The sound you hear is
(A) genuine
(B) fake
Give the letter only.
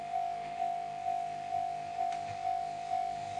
B